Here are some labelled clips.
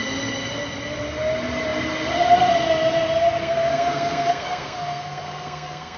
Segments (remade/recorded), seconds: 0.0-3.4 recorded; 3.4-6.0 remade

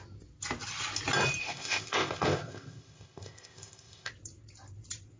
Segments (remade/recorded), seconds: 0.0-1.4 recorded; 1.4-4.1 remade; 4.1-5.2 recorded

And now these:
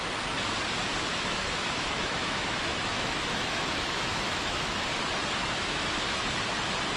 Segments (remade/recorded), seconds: 0.0-1.1 recorded; 1.1-4.7 remade; 4.7-5.4 recorded; 5.4-6.3 remade; 6.3-7.0 recorded

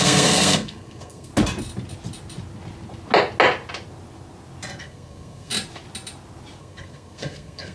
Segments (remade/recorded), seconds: 0.0-1.3 remade; 1.3-4.8 recorded; 4.8-5.5 remade; 5.5-6.6 recorded; 6.6-7.7 remade

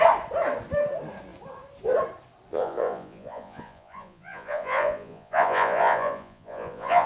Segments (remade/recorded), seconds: 0.0-2.5 recorded; 2.5-7.1 remade